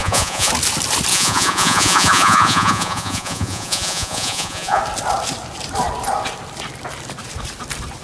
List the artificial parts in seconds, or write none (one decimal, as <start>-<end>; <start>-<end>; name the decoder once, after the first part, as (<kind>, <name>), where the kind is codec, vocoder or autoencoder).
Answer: 0.0-0.5 (vocoder, Vocos); 1.1-4.8